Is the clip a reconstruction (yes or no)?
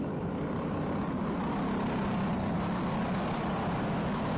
no